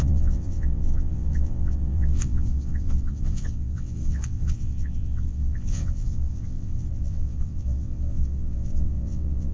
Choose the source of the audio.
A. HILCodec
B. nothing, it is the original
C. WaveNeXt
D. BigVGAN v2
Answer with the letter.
C